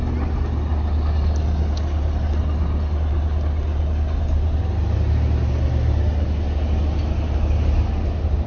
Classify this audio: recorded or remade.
recorded